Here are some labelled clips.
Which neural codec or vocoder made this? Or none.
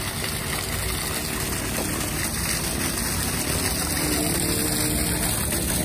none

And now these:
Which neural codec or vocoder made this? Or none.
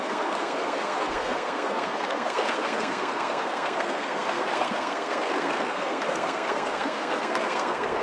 codec, SNAC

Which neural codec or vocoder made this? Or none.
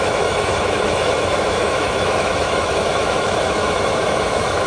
autoencoder, DAC-VAE